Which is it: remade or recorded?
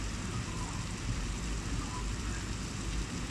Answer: recorded